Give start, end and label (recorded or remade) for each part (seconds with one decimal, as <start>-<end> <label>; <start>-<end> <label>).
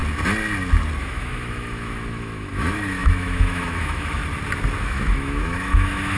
0.0-1.0 recorded; 1.0-4.2 remade; 4.2-4.8 recorded; 4.8-6.2 remade